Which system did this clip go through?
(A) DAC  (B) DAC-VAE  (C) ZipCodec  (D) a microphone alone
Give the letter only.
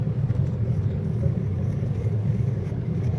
A